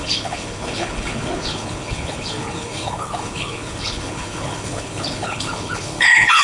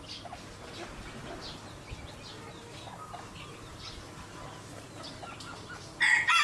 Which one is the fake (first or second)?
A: first